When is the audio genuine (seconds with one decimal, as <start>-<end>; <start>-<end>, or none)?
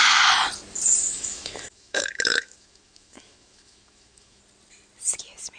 0.0-1.0; 4.4-5.6